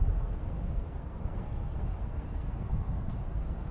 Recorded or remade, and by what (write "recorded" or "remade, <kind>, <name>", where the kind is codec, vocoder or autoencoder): remade, codec, SNAC